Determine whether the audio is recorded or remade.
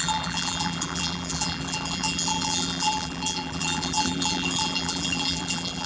remade